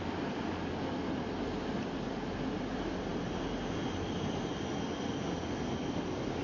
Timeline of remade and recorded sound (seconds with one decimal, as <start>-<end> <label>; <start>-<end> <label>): 0.0-6.4 recorded